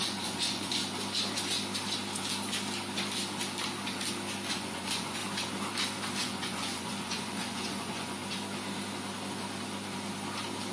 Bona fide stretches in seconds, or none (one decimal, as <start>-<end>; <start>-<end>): 0.8-4.5; 5.2-6.2; 8.2-10.7